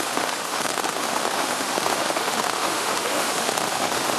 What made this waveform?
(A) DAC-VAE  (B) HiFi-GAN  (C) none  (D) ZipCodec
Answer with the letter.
A